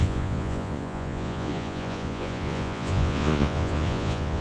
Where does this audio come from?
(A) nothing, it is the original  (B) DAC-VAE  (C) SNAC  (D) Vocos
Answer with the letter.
D